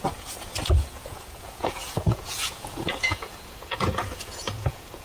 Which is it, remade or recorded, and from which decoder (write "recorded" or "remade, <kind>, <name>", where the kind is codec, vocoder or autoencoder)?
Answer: remade, vocoder, Vocos